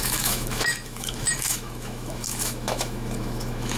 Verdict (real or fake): fake